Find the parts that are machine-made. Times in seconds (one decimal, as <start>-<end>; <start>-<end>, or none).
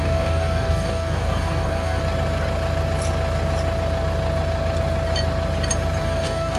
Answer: 0.0-2.0; 6.0-6.6